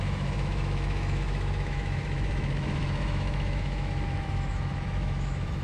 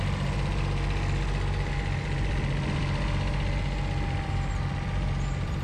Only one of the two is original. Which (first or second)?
second